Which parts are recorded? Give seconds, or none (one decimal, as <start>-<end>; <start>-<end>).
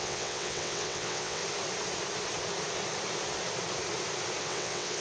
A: 1.4-4.4